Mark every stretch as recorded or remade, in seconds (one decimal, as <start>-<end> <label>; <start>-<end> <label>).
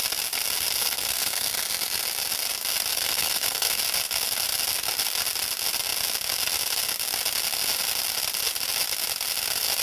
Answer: 0.0-0.8 recorded; 0.8-1.5 remade; 1.5-2.9 recorded; 2.9-3.8 remade; 3.8-9.8 recorded